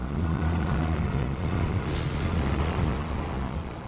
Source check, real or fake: fake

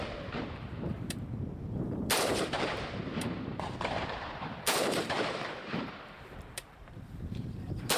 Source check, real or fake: fake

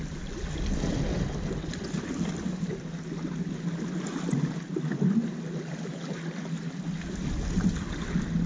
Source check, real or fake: real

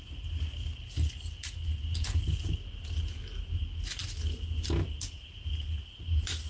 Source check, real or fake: real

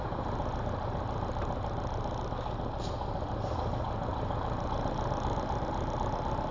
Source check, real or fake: real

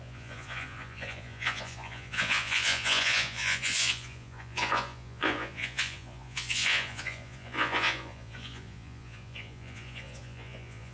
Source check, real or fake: fake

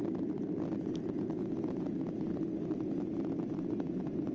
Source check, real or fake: real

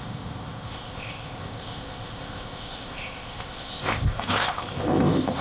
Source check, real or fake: fake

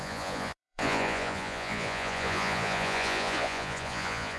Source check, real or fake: fake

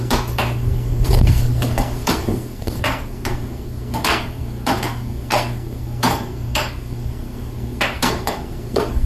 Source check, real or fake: fake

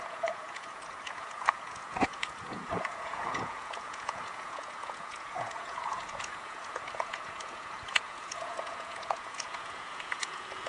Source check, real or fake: fake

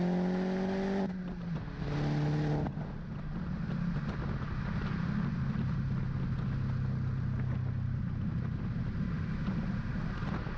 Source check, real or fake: real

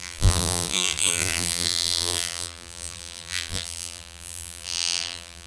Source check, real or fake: fake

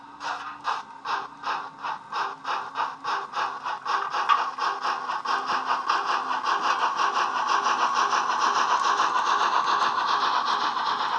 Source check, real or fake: real